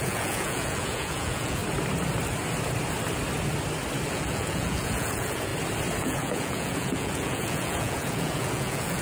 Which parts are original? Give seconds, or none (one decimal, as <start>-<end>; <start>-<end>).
1.6-4.1; 5.5-6.0